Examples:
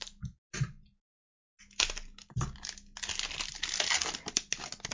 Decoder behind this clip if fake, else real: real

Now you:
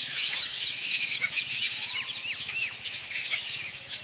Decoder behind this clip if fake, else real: fake, autoencoder, DAC-VAE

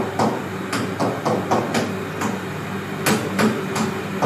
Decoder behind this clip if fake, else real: real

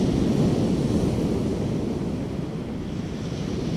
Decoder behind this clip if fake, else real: real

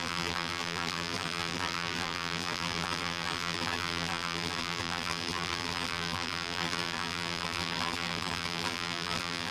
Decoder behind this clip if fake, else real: fake, vocoder, BigVGAN v2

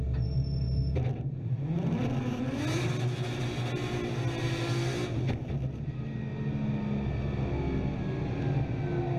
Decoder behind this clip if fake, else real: real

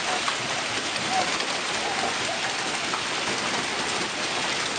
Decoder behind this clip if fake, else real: real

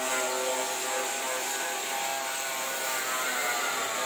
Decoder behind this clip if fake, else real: real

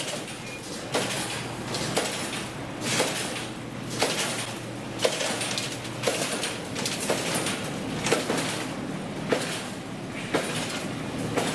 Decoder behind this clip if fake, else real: real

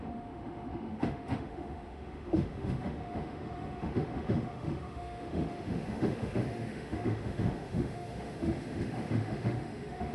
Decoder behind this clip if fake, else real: fake, autoencoder, DAC-VAE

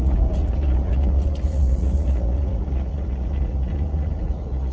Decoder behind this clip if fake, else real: fake, vocoder, Vocos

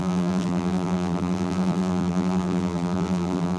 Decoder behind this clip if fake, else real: fake, vocoder, BigVGAN v2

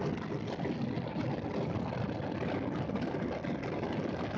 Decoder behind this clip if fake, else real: real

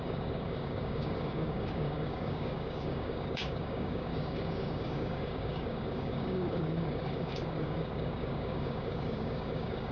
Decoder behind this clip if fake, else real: fake, codec, DAC